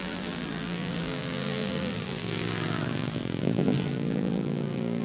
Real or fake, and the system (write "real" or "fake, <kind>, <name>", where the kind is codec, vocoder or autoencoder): fake, vocoder, BigVGAN v2